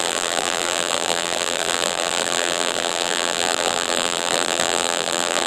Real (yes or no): no